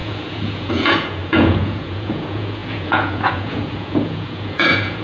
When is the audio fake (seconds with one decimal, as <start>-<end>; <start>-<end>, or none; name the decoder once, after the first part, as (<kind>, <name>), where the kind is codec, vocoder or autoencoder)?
0.0-5.0 (vocoder, Vocos)